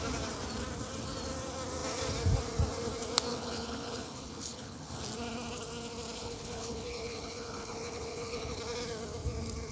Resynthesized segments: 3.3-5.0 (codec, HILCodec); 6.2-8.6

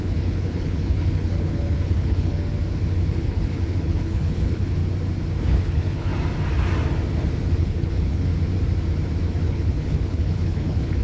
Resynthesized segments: 0.0-2.4 (codec, HILCodec); 3.1-4.8; 5.4-6.1; 7.6-8.3; 9.5-11.0

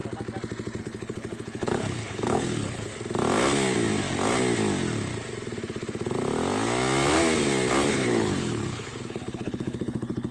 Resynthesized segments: 0.8-2.9 (codec, HILCodec); 7.9-10.3

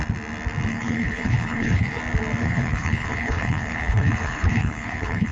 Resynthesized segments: 0.7-2.0 (codec, HILCodec); 2.4-5.3

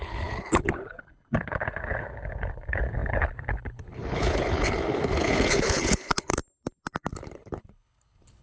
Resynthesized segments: 0.0-6.4 (codec, HILCodec); 7.1-8.4